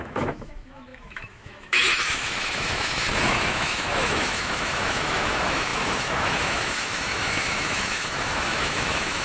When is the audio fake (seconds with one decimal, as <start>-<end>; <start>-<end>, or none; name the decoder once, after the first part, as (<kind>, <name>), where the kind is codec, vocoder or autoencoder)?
0.0-9.2 (autoencoder, DAC-VAE)